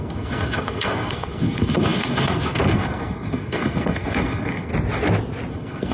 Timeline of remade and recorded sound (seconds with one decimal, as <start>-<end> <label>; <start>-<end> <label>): 0.0-4.7 remade; 4.7-5.5 recorded; 5.5-5.9 remade

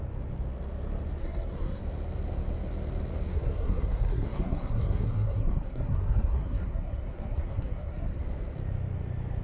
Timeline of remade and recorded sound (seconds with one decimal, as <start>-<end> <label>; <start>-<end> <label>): 0.0-1.2 recorded; 1.2-1.8 remade; 1.8-3.3 recorded; 3.3-8.2 remade; 8.2-9.4 recorded

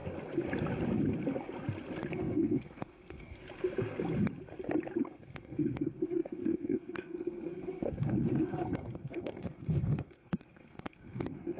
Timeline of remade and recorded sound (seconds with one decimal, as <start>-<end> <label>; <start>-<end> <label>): 0.0-2.1 recorded; 2.1-3.4 remade; 3.4-5.0 recorded; 5.0-11.6 remade

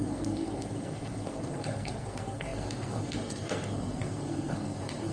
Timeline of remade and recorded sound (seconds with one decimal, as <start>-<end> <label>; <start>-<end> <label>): 0.0-5.1 remade